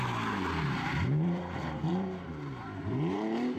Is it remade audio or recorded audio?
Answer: remade